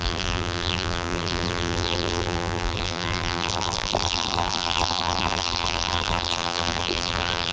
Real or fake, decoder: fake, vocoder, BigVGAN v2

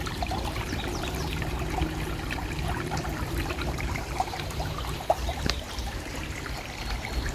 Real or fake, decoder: fake, vocoder, BigVGAN v2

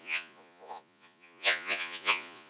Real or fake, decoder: fake, vocoder, Vocos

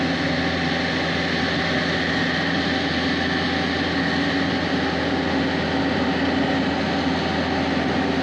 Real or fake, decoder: real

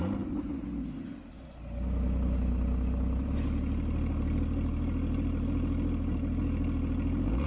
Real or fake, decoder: real